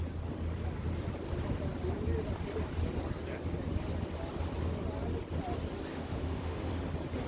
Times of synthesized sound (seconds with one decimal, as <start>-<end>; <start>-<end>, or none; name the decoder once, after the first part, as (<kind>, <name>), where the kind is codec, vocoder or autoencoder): 5.9-6.7 (autoencoder, DAC-VAE)